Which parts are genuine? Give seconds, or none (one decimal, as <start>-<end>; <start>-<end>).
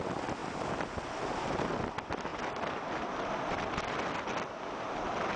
0.0-5.4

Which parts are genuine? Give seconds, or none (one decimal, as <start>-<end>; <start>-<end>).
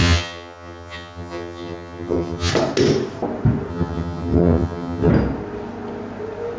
2.5-3.7; 5.1-6.6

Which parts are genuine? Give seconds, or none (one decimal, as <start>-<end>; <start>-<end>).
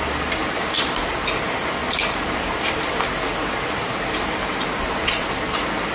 0.0-5.9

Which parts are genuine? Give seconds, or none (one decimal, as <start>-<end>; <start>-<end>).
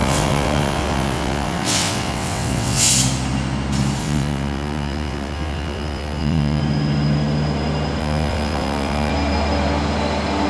2.9-4.0; 6.6-8.0; 9.1-10.5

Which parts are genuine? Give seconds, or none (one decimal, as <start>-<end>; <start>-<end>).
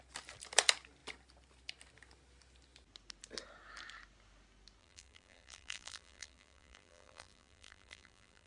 0.0-4.8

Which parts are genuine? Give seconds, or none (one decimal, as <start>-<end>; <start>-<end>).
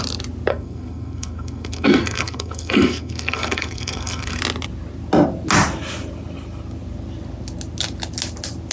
0.0-0.5; 4.4-8.7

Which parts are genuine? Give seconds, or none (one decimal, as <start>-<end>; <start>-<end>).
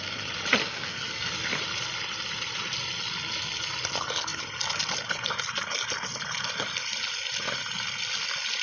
0.0-0.6; 1.3-8.6